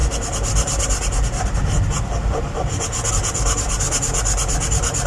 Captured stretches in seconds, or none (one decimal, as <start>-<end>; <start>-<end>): 0.0-5.1